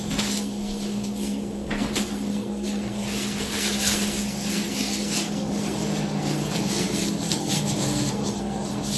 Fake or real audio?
fake